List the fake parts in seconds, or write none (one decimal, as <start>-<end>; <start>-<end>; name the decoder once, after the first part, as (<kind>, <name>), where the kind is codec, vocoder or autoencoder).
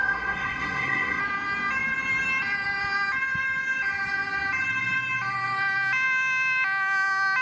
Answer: 0.0-1.2 (codec, SNAC)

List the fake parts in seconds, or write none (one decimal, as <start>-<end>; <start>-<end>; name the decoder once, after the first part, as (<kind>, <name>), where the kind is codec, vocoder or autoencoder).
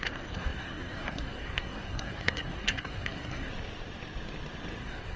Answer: 0.0-3.5 (codec, SNAC); 4.8-5.2